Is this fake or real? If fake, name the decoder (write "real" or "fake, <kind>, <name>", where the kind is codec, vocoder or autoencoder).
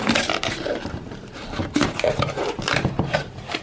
fake, vocoder, BigVGAN v2